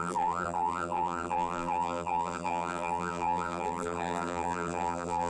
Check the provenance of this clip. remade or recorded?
remade